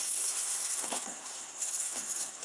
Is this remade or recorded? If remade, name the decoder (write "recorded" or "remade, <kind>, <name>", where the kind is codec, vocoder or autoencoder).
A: remade, codec, SNAC